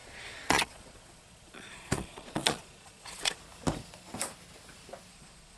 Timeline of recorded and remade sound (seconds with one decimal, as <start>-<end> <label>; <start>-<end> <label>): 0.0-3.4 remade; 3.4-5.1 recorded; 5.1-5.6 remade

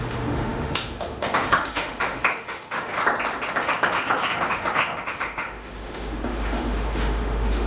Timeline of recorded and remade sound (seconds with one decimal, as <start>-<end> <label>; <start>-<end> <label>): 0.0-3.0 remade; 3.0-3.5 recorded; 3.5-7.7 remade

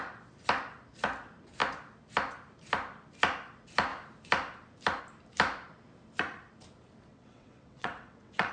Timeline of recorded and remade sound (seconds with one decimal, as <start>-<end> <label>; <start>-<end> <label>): 0.0-7.1 recorded; 7.1-8.5 remade